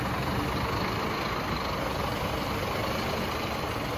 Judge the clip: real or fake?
real